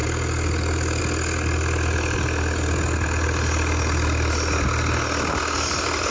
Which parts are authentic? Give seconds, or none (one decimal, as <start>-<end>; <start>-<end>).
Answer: 0.0-6.1